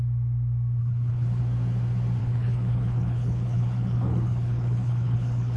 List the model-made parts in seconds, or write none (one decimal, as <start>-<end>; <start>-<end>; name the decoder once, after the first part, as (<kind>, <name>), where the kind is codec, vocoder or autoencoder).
0.8-1.4 (codec, HILCodec); 2.2-5.6